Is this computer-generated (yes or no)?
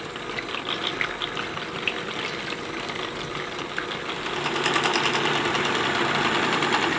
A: no